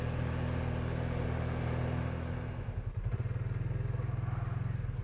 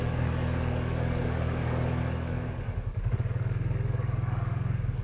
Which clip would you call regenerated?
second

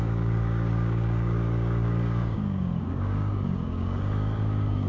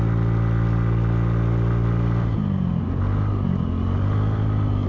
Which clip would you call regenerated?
first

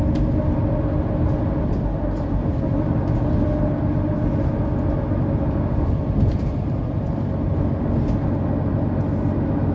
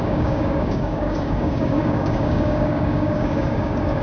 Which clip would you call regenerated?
second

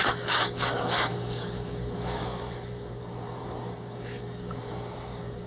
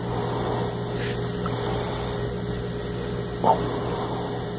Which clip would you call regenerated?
first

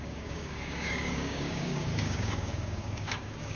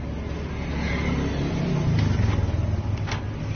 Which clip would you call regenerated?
first